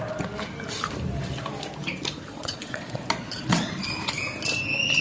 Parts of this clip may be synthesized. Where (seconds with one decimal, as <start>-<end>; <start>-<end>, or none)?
2.3-3.7